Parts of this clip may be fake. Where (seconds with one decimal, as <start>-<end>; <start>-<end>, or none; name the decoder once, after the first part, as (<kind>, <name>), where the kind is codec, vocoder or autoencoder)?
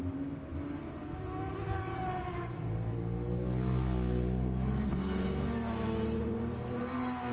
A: none